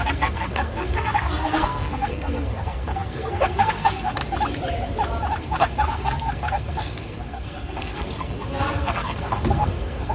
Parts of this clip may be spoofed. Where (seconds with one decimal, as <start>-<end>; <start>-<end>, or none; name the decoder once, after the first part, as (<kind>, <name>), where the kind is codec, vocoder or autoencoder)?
0.0-4.2 (codec, SNAC); 5.4-10.1